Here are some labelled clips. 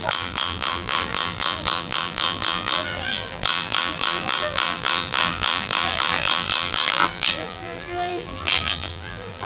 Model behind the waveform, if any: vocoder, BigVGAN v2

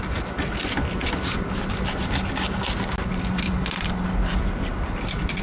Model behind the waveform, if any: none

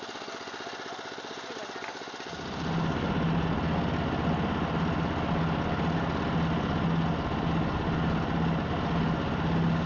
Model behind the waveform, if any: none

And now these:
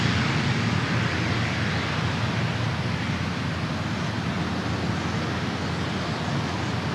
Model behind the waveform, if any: none